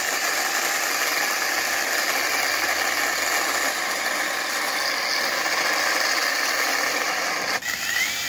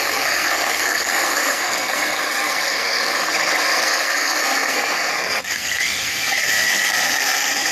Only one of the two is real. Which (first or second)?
first